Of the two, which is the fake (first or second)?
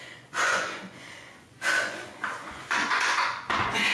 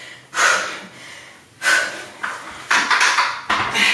first